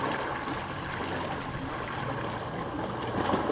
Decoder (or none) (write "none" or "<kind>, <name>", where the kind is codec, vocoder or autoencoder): none